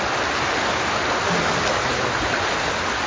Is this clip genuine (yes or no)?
yes